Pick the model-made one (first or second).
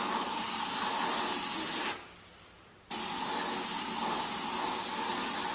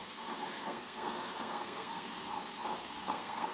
second